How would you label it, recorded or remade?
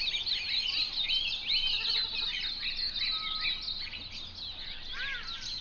recorded